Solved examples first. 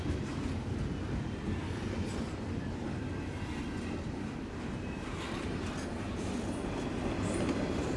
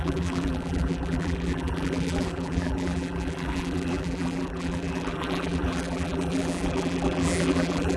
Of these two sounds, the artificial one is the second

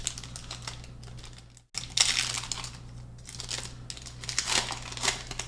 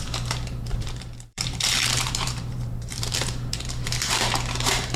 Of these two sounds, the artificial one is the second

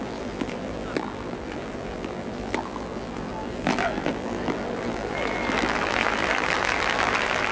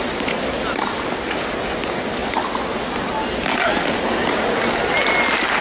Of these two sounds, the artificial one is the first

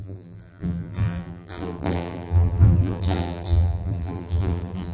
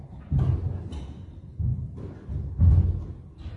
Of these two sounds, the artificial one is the first